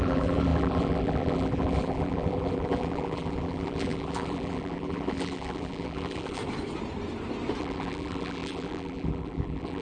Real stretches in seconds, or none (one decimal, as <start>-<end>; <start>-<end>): 6.4-7.6